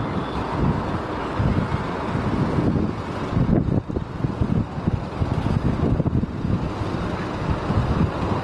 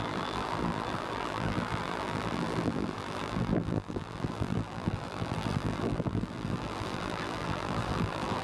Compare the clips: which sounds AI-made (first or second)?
second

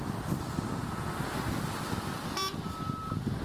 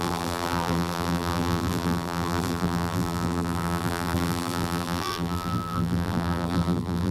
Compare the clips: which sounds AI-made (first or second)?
second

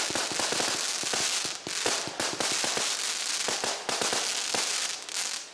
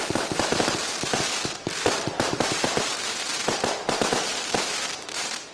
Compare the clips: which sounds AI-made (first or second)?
second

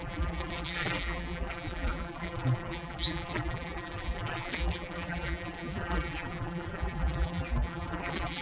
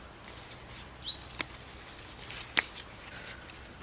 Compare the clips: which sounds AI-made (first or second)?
first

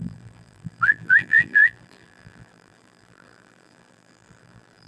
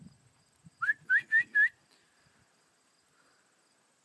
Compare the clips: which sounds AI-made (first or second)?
first